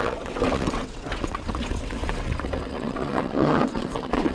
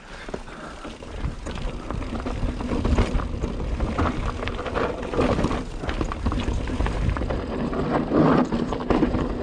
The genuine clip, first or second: second